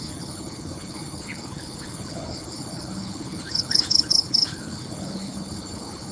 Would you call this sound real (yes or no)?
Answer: no